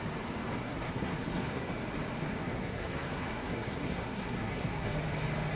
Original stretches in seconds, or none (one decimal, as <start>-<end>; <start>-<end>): 0.0-0.6; 1.7-2.2; 5.0-5.6

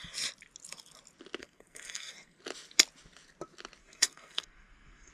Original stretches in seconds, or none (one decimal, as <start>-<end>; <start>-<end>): 0.0-1.4; 2.4-3.8